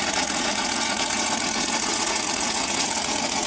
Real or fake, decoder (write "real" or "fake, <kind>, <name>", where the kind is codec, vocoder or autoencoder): fake, vocoder, Vocos